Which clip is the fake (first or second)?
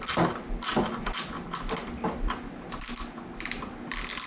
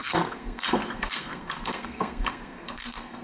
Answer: second